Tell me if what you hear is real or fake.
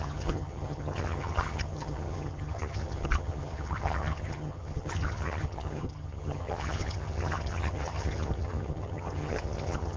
fake